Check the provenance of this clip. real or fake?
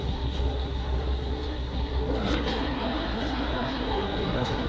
fake